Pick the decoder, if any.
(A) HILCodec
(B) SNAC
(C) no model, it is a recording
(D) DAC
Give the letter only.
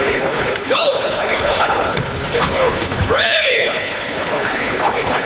A